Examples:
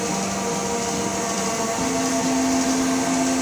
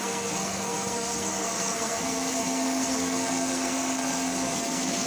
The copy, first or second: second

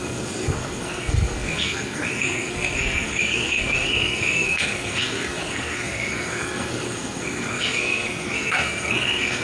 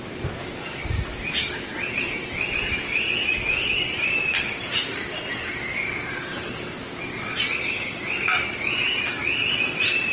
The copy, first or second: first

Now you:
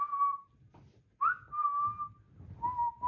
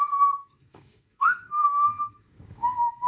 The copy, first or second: second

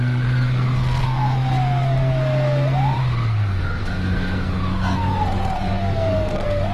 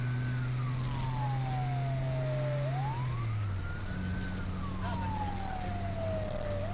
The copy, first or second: first